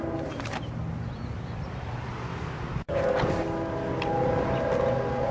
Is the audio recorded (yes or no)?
yes